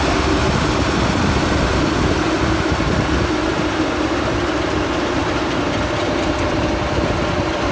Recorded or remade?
recorded